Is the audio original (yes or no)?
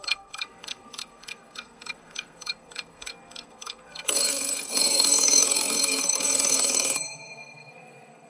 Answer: no